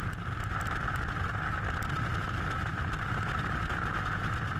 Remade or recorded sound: recorded